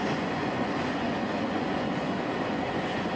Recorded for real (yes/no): no